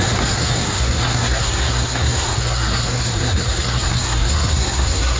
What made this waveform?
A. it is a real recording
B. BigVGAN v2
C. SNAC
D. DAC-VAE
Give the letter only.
C